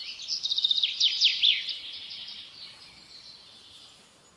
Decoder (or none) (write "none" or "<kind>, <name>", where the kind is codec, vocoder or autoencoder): none